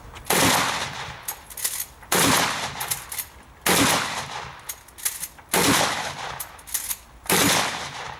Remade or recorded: recorded